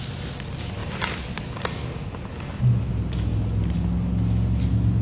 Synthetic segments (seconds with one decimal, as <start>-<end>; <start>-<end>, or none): none